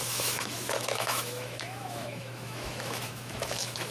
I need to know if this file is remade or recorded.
remade